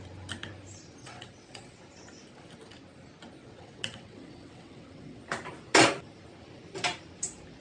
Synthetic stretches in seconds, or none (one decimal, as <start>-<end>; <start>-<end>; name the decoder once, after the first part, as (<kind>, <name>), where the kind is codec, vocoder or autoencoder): 1.0-1.8 (vocoder, WaveNeXt); 3.4-5.2